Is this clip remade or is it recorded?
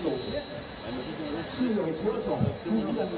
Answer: recorded